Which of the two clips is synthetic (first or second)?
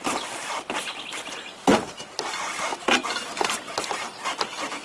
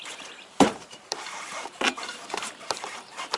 second